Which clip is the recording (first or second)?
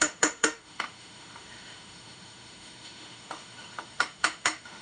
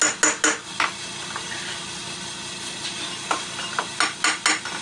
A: second